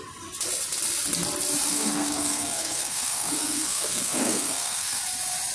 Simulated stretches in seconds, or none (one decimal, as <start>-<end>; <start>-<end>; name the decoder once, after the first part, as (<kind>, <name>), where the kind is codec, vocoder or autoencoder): 1.7-5.0 (codec, SNAC)